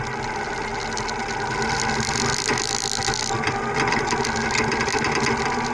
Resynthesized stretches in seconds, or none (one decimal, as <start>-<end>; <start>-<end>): none